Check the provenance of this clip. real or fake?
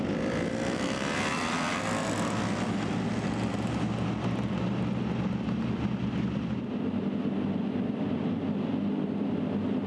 real